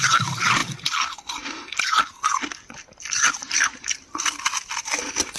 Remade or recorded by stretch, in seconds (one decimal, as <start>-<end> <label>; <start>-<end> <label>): 0.0-0.6 remade; 0.6-3.8 recorded; 3.8-5.4 remade